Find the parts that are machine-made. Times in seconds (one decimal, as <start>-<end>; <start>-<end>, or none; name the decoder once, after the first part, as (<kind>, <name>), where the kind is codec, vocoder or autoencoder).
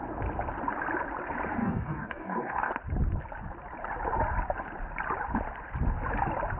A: 1.6-2.7 (codec, DAC)